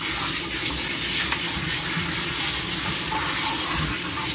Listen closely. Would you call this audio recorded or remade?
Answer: recorded